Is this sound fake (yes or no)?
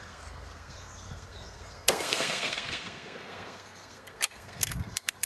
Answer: yes